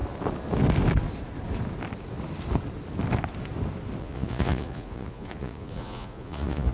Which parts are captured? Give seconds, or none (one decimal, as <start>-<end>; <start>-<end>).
0.0-4.0